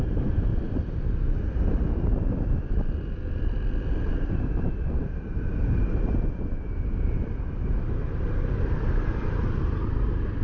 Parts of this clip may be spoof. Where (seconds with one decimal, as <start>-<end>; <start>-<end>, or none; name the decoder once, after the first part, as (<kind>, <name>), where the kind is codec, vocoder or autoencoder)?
0.0-0.5 (vocoder, BigVGAN v2); 4.1-10.4